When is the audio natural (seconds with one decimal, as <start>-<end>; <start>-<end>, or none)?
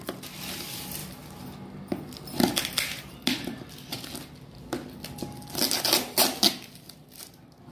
0.0-7.7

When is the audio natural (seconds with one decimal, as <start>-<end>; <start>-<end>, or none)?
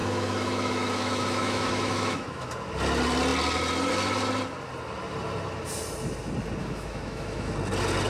2.5-6.6; 7.5-8.1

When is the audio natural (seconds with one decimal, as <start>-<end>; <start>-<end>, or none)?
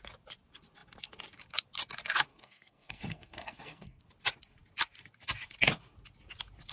0.0-2.3; 4.0-6.7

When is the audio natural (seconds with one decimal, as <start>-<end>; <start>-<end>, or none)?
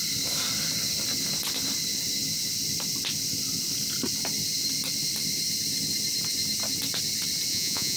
0.0-7.5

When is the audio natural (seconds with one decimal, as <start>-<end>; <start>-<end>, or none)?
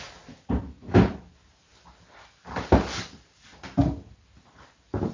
0.0-5.1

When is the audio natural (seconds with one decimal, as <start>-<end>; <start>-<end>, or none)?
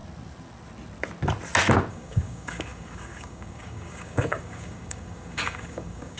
0.0-1.9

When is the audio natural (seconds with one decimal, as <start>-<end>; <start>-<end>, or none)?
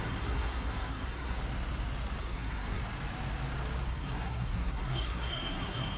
1.4-2.2; 2.8-3.9